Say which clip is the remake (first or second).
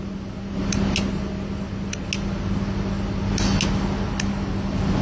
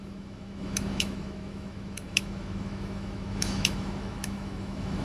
second